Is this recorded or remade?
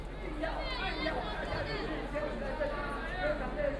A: recorded